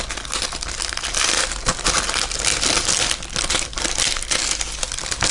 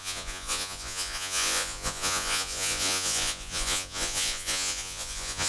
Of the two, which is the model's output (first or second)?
second